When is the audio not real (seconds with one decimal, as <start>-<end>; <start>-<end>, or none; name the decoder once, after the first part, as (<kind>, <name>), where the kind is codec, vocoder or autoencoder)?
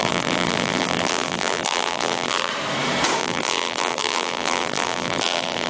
0.0-2.5 (vocoder, BigVGAN v2); 3.2-5.7